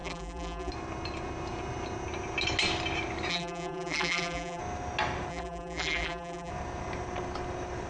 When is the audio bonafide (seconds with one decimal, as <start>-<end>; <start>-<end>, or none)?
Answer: 0.7-3.3; 4.6-5.3; 6.5-7.9